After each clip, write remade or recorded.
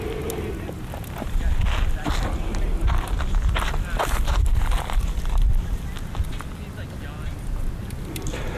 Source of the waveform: recorded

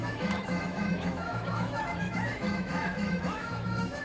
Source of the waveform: remade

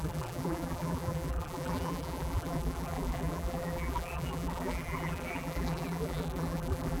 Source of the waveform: remade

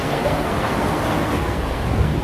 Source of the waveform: remade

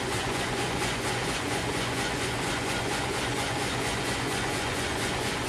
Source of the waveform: remade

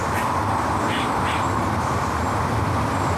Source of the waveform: recorded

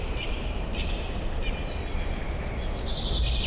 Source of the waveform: recorded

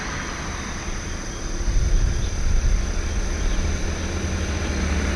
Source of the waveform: recorded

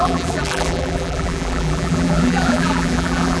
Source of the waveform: remade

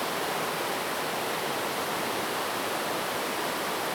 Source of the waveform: remade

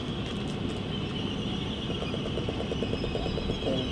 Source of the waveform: recorded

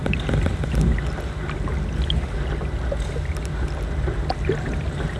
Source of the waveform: recorded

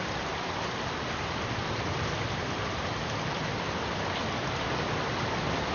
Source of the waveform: recorded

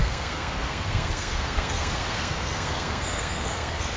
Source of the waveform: remade